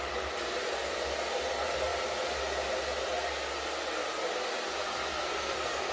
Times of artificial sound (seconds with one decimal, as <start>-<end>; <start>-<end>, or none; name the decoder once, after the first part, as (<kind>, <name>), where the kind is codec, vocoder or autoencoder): 5.1-5.9 (codec, SNAC)